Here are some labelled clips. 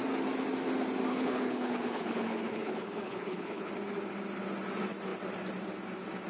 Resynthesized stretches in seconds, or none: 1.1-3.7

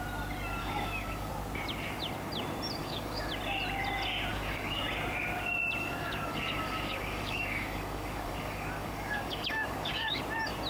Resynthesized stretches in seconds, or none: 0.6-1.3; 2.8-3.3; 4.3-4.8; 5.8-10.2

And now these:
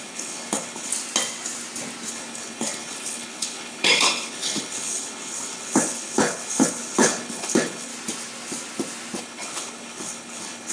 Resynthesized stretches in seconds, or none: 0.0-0.9; 2.1-7.9; 9.2-10.7

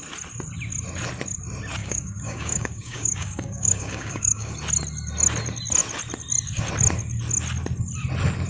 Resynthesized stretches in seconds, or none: 1.8-4.5

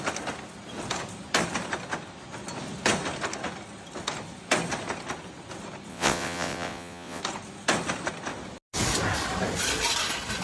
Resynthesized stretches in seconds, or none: 5.9-7.2